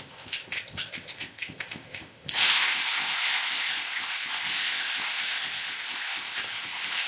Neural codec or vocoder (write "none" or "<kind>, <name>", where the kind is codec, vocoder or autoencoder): codec, ZipCodec